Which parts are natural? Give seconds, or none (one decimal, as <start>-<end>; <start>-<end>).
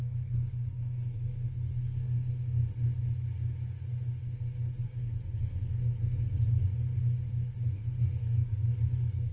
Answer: 2.6-4.8; 6.3-7.3